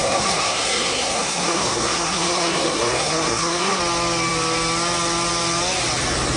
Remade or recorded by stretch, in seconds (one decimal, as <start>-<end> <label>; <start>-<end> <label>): 0.0-3.8 remade; 3.8-6.4 recorded